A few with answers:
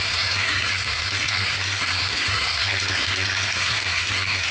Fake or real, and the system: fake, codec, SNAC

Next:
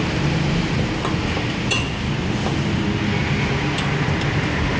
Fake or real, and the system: real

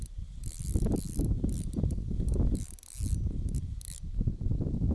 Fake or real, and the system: real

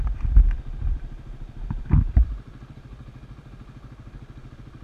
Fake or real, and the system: fake, vocoder, BigVGAN v2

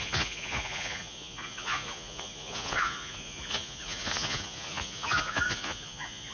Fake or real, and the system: fake, vocoder, Vocos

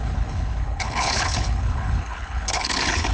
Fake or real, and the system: fake, codec, HILCodec